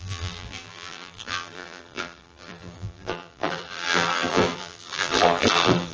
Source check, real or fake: fake